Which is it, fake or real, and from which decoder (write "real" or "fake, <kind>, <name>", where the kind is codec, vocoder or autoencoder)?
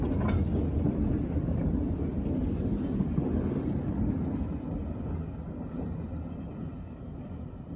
real